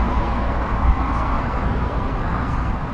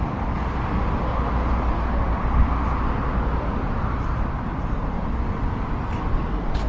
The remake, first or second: first